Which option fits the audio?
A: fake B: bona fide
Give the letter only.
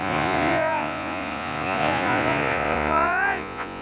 A